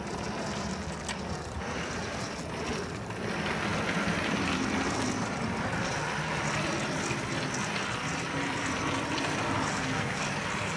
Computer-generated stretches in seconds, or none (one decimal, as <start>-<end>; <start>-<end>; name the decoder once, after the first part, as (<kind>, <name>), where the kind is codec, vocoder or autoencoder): 9.7-10.2 (codec, SNAC)